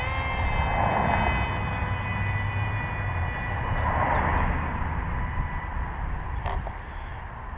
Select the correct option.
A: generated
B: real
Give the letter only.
B